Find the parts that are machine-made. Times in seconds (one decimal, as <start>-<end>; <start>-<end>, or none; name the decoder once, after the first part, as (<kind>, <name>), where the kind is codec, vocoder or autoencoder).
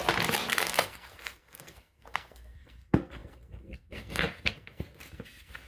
0.5-5.7 (codec, SNAC)